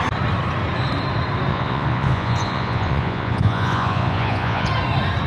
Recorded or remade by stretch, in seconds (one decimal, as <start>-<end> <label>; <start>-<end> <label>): 0.0-1.5 recorded; 1.5-4.7 remade; 4.7-5.3 recorded